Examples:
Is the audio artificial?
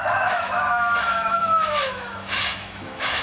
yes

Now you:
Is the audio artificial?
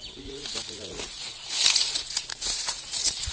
yes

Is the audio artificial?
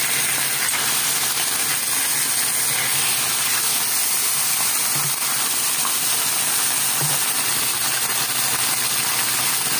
no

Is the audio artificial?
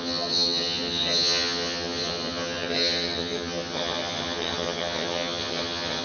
yes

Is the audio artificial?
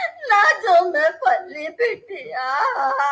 no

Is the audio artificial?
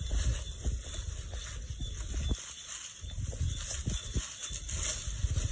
no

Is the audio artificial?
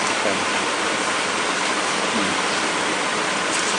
yes